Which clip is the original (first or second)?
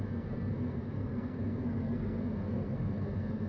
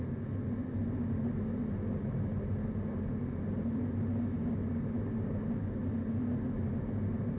second